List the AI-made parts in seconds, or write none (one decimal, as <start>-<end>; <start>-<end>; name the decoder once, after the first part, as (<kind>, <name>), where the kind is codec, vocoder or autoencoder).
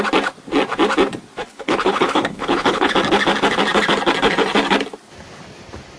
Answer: 1.4-2.9 (codec, HILCodec)